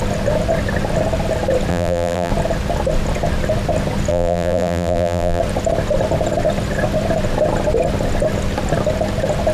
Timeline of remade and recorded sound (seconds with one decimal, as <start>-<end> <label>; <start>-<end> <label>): 0.0-1.7 recorded; 1.7-2.3 remade; 2.3-4.1 recorded; 4.1-5.4 remade; 5.4-9.5 recorded